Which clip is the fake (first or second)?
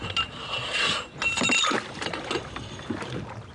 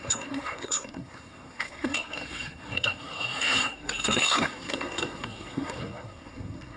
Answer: second